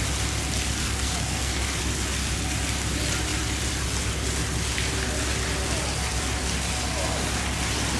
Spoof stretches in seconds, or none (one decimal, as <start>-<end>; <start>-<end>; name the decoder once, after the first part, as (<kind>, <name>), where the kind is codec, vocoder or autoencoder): 0.8-1.8 (codec, SNAC)